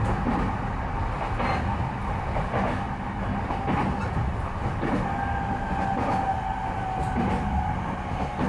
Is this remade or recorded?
recorded